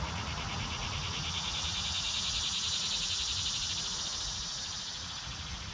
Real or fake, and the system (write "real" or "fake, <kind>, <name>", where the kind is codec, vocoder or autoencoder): fake, vocoder, Vocos